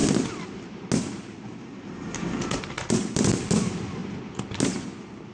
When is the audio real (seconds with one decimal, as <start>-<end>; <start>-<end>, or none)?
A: 0.0-5.3